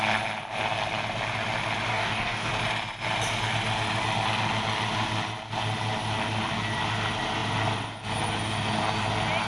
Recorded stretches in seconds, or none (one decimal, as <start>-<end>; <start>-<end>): 0.0-1.9; 2.5-9.5